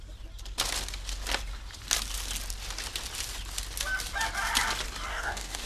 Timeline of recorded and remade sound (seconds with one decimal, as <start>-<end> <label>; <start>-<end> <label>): 0.0-5.1 recorded; 5.1-5.7 remade